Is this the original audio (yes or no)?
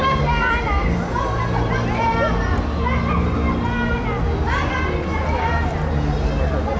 yes